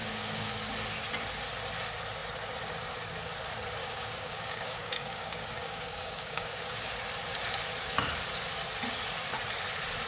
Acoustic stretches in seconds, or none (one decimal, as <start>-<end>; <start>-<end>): 0.5-3.8; 6.9-10.1